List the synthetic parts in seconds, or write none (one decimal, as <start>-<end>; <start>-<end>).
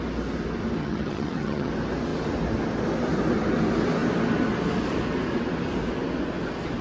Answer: 0.8-1.7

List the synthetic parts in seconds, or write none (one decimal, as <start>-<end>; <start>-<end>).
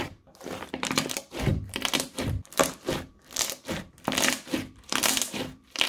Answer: 0.0-5.9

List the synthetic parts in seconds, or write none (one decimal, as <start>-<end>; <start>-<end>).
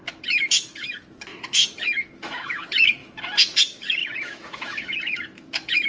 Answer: 0.0-5.9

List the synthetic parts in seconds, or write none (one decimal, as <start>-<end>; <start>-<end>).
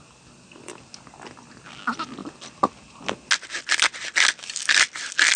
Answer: none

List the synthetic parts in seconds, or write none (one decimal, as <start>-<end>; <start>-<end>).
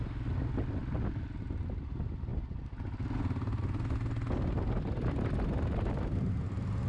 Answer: none